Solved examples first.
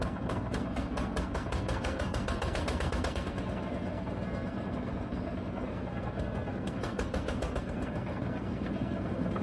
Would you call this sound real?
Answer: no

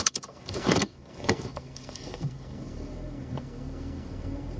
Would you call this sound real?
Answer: no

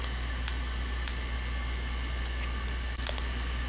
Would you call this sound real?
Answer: yes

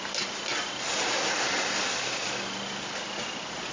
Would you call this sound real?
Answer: yes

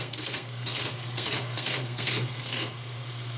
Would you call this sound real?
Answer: no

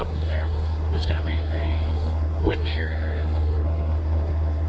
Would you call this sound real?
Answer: no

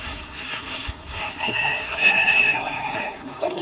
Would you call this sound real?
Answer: no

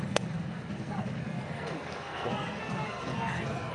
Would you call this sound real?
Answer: no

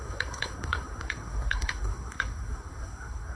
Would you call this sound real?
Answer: no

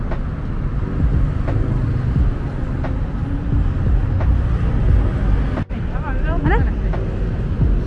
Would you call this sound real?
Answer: yes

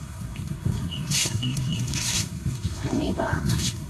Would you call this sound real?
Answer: no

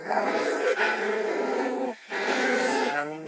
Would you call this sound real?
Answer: no